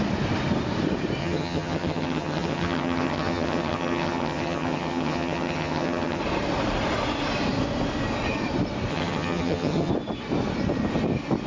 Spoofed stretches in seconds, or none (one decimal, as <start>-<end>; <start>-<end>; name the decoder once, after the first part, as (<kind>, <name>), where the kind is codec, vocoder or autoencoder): 1.2-6.2 (vocoder, HiFi-GAN); 8.9-9.9